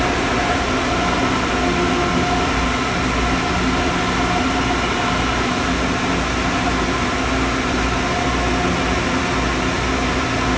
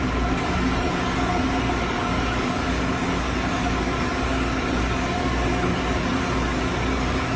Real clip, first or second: first